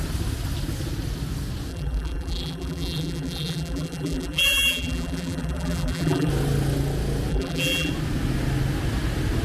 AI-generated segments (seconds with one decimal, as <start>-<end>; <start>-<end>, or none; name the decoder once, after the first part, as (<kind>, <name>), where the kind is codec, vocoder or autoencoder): 1.7-6.3 (vocoder, BigVGAN v2); 7.3-7.9